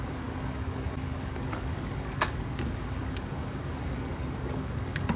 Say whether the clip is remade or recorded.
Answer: remade